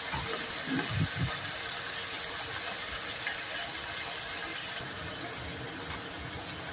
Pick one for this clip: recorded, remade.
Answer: recorded